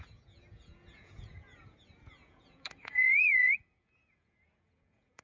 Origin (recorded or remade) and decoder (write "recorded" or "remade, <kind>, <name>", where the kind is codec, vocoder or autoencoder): remade, vocoder, Vocos